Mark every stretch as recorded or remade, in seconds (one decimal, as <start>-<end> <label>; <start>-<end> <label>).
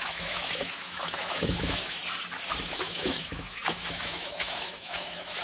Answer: 0.0-2.0 remade; 2.0-2.6 recorded; 2.6-5.4 remade